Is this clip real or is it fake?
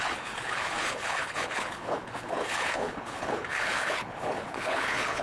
fake